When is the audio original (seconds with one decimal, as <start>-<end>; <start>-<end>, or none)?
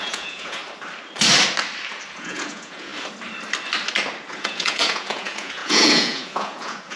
0.6-2.1; 2.9-4.3